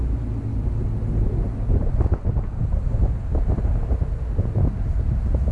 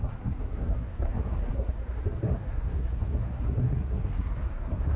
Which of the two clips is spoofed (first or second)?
second